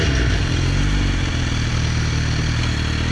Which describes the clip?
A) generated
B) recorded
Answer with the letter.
B